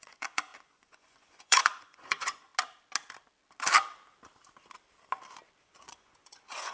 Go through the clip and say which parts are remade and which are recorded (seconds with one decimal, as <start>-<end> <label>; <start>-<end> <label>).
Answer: 0.0-2.5 remade; 2.5-5.6 recorded; 5.6-6.7 remade

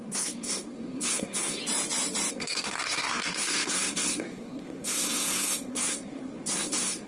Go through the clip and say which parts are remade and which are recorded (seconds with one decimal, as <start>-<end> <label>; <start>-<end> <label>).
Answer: 0.0-1.6 remade; 1.6-2.3 recorded; 2.3-7.1 remade

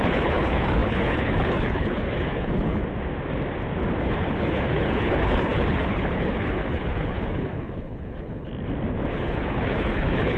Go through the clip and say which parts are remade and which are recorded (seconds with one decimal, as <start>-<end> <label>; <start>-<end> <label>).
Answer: 0.0-2.8 remade; 2.8-4.0 recorded; 4.0-8.5 remade; 8.5-9.1 recorded; 9.1-10.4 remade